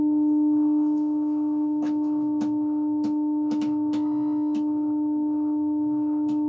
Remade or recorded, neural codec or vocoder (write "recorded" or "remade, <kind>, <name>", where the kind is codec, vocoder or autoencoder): remade, autoencoder, DAC-VAE